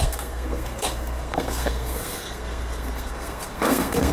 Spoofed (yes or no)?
yes